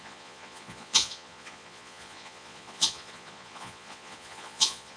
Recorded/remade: remade